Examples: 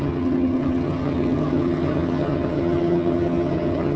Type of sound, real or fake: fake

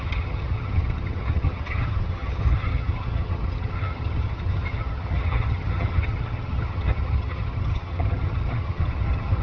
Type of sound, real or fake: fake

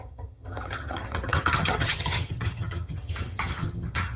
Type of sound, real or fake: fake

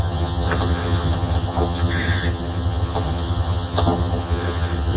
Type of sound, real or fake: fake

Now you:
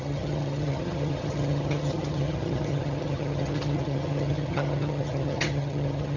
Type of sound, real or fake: fake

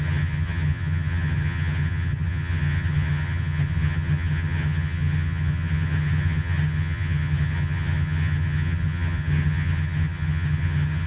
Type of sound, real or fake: fake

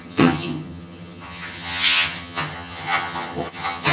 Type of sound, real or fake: fake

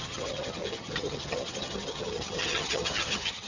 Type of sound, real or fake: fake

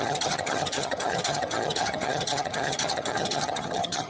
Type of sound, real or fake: fake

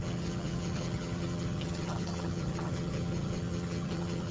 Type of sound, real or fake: fake